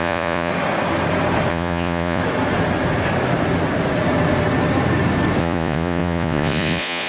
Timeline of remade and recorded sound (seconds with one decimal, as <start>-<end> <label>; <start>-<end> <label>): 0.0-0.5 remade; 0.5-1.5 recorded; 1.5-2.2 remade; 2.2-5.4 recorded; 5.4-7.1 remade